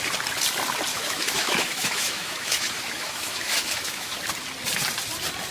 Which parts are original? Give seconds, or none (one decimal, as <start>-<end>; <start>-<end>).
0.0-0.9; 4.2-5.5